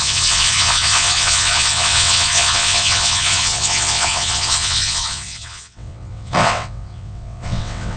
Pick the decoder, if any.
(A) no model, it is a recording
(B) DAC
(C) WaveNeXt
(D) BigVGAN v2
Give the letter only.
C